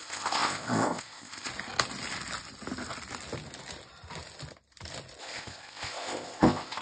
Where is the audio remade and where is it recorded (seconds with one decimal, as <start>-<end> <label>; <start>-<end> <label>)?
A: 0.0-1.5 remade; 1.5-5.2 recorded; 5.2-6.8 remade